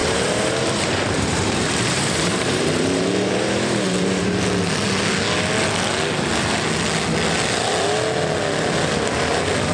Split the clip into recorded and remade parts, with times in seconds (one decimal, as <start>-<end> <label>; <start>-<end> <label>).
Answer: 0.0-4.4 remade; 4.4-9.7 recorded